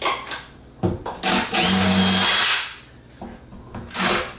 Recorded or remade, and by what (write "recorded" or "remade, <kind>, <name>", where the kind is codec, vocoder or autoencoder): recorded